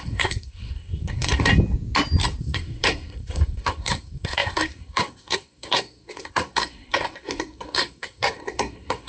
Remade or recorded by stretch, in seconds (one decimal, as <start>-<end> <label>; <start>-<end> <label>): 0.0-1.5 remade; 1.5-2.4 recorded; 2.4-9.1 remade